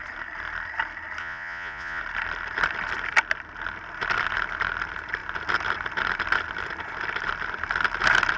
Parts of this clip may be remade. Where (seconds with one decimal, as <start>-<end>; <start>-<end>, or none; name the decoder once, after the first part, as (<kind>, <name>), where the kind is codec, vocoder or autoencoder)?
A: 1.2-2.0 (vocoder, Vocos)